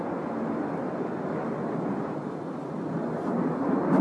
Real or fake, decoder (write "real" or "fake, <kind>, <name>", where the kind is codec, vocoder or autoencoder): real